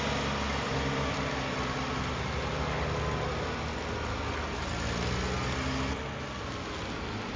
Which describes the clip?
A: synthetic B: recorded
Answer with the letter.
B